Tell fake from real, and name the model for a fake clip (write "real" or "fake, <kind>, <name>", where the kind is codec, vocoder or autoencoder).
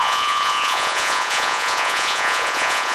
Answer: fake, vocoder, Vocos